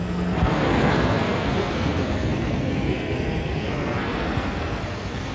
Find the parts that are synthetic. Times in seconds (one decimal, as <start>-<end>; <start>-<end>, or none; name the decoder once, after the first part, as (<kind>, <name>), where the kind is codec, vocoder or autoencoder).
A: 0.0-5.3 (codec, SNAC)